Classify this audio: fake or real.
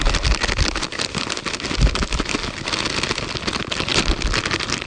real